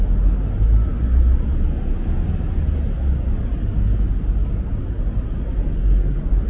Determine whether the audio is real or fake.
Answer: real